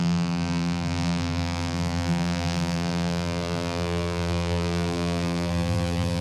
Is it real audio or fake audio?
fake